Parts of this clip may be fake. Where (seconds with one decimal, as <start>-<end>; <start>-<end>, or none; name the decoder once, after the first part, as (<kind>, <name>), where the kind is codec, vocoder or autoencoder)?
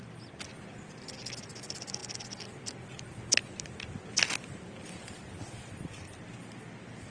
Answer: none